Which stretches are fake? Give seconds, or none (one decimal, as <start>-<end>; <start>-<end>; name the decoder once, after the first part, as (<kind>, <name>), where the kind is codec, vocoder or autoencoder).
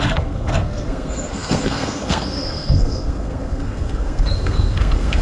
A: 0.0-5.2 (codec, SNAC)